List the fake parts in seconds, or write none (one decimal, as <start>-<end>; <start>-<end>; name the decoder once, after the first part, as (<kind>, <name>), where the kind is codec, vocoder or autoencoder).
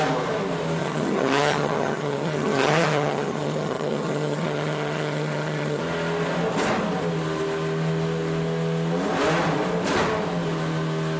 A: 0.8-5.8 (vocoder, HiFi-GAN)